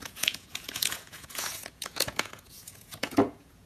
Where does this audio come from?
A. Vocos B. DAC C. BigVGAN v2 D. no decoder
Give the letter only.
A